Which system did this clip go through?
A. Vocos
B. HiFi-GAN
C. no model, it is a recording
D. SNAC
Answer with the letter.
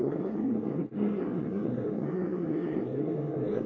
D